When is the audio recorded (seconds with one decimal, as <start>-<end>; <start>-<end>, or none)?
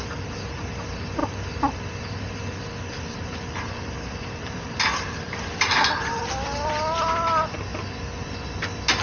0.0-9.0